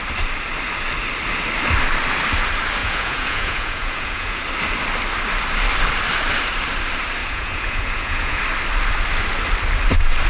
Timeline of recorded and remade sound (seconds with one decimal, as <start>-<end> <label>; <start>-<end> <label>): 0.0-2.8 recorded; 2.8-4.4 remade; 4.4-7.2 recorded; 7.2-8.4 remade; 8.4-10.3 recorded